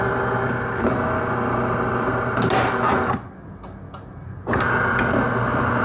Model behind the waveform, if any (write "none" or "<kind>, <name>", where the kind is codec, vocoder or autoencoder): none